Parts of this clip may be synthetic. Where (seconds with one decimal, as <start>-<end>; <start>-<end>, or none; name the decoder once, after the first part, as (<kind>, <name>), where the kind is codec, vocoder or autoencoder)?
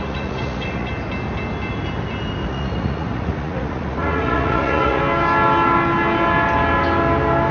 0.0-0.9 (vocoder, Vocos); 2.4-5.0